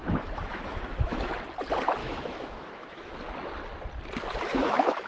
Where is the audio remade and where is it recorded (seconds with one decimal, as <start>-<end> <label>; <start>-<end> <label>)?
0.0-1.3 remade; 1.3-2.0 recorded; 2.0-3.1 remade; 3.1-4.5 recorded; 4.5-5.1 remade